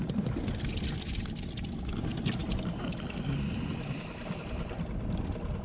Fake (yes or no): yes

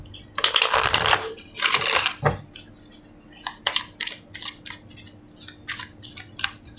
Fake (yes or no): no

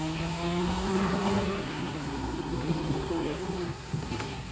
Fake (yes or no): yes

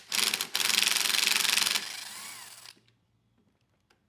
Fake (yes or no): no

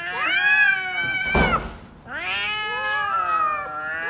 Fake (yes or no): no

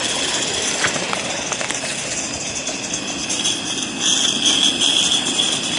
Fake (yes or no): no